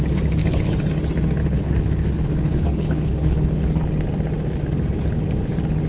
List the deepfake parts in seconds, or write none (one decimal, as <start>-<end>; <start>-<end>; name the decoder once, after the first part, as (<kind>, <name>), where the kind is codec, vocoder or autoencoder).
0.4-0.9 (codec, HILCodec); 1.4-3.8